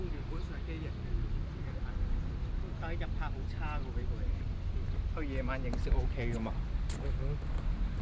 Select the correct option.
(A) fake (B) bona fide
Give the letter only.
B